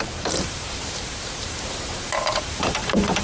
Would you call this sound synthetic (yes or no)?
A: yes